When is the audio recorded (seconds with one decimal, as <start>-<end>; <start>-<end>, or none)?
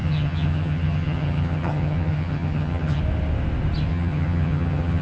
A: 3.0-3.9